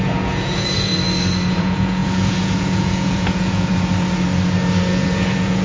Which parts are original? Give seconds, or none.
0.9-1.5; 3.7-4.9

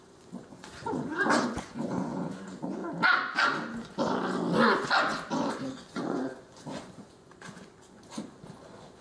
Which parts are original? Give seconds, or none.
2.8-5.5